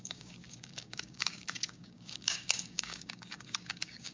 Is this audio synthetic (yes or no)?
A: yes